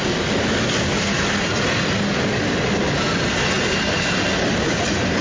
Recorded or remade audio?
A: recorded